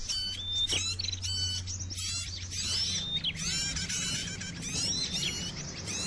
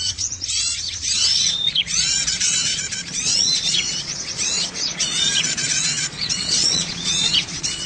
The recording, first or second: first